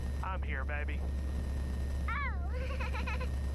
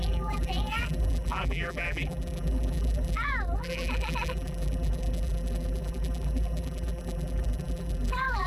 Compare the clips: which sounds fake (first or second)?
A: second